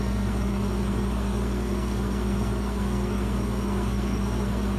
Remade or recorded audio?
remade